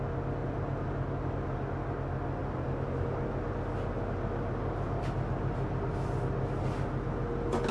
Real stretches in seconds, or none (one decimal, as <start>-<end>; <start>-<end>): 0.0-0.4; 1.6-2.4; 3.2-7.7